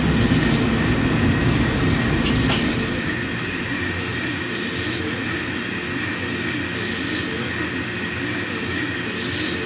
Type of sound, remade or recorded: recorded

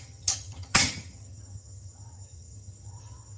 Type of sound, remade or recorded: remade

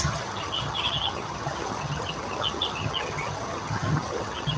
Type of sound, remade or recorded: remade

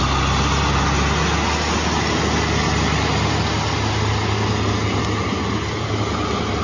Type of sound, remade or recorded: recorded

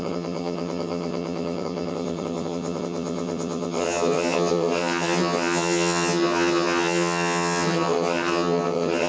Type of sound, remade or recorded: remade